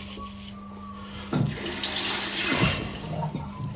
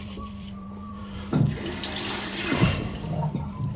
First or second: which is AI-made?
second